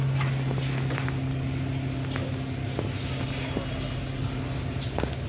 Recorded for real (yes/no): yes